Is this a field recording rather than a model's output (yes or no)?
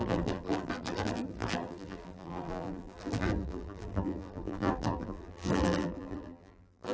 no